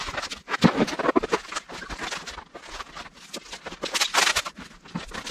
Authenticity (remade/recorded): recorded